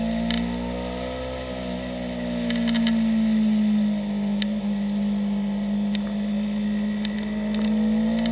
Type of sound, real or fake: real